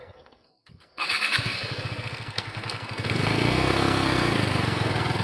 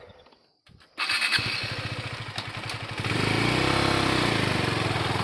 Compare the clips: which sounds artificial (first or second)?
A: first